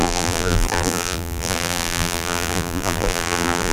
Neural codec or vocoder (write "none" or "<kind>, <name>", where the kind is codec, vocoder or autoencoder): vocoder, BigVGAN v2